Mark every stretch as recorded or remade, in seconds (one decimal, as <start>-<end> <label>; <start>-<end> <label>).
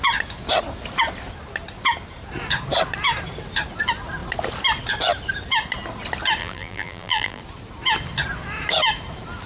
0.0-6.4 recorded; 6.4-7.4 remade; 7.4-9.5 recorded